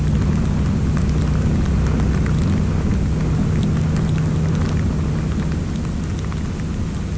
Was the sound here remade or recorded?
recorded